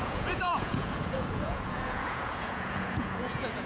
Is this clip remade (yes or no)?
yes